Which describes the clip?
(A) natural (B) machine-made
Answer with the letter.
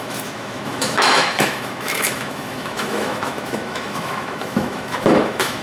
B